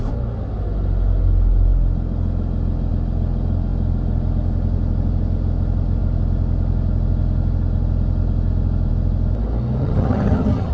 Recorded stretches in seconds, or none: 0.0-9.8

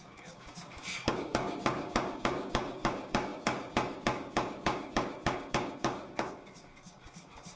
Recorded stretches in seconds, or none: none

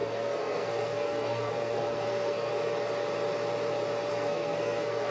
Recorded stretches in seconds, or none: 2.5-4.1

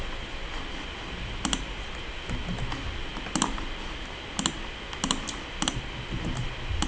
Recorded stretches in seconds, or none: 0.0-6.9

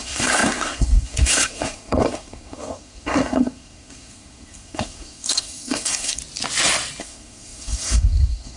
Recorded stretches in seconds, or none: 6.2-7.0

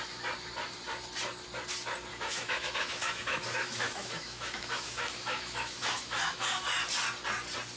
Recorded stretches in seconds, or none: 0.0-2.1; 6.6-7.8